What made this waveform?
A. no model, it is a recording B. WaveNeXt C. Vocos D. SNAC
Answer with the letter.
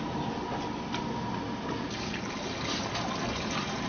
A